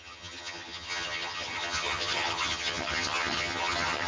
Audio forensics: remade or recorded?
remade